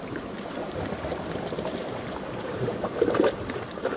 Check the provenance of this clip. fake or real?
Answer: real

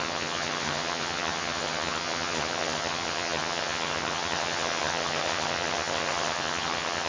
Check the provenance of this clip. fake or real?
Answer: fake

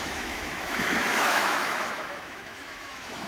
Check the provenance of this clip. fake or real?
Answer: fake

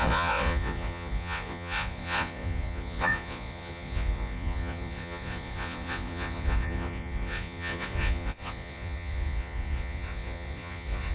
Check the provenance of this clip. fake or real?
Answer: fake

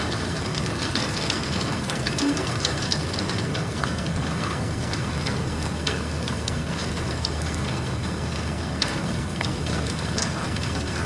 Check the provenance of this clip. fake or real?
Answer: fake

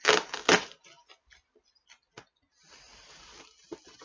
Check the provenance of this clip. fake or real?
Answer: real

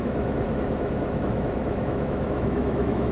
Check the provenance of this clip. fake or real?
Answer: fake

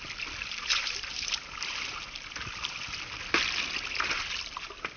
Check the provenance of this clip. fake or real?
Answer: real